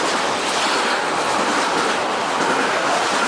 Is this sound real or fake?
real